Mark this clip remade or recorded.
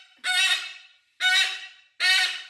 recorded